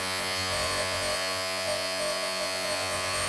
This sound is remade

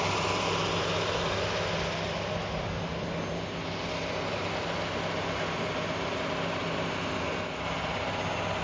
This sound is recorded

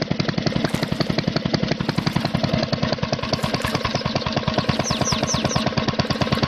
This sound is recorded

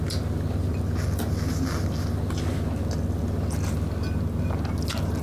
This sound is recorded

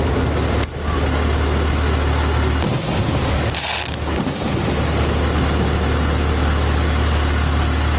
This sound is recorded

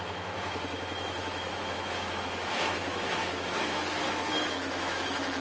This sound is remade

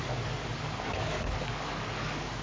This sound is remade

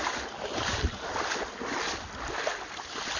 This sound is recorded